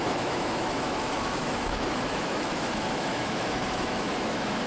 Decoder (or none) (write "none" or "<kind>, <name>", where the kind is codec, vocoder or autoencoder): autoencoder, DAC-VAE